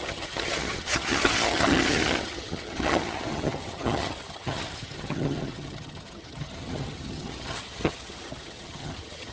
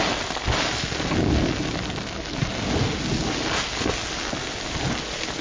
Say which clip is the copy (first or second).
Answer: first